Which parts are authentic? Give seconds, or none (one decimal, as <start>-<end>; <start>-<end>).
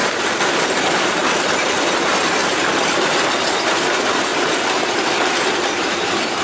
0.7-4.3; 6.0-6.4